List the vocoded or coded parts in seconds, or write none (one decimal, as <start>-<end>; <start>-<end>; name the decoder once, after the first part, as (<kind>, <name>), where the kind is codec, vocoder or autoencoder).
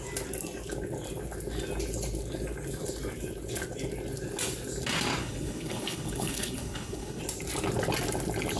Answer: 5.2-7.2 (codec, HILCodec)